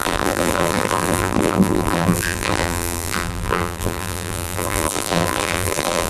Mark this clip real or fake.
fake